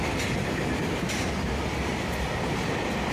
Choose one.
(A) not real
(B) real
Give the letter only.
B